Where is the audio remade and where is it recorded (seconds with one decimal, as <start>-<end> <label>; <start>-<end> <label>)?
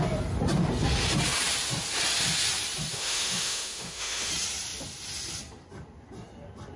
0.0-2.9 recorded; 2.9-4.3 remade; 4.3-6.8 recorded